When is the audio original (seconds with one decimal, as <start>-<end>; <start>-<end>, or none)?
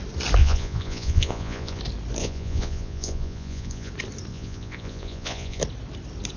0.0-0.4; 1.8-2.2; 3.9-4.3; 5.6-6.4